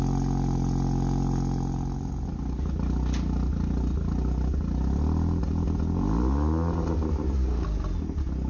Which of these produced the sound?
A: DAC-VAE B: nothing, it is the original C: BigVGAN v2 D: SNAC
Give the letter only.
B